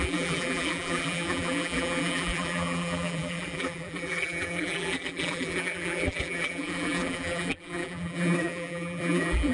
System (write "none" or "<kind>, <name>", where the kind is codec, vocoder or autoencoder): vocoder, BigVGAN v2